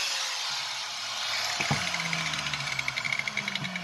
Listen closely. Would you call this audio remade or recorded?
recorded